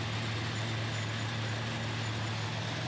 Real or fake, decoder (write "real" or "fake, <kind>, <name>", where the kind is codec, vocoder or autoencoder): real